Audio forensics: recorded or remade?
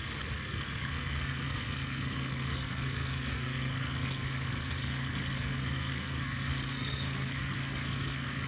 remade